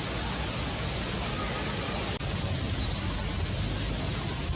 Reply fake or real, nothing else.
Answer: real